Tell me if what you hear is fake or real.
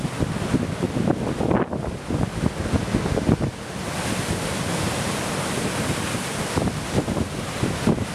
real